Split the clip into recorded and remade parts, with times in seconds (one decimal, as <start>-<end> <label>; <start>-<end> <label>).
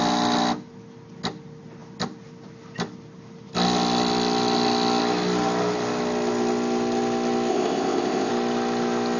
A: 0.0-7.5 recorded; 7.5-8.3 remade; 8.3-9.2 recorded